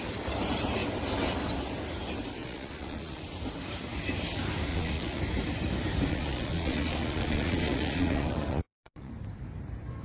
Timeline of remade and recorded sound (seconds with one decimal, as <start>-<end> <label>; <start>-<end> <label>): 0.0-2.4 recorded; 2.4-3.2 remade; 3.2-4.7 recorded; 4.7-5.2 remade; 5.2-6.1 recorded; 6.1-9.1 remade; 9.1-10.0 recorded